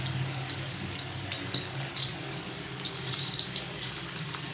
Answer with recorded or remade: remade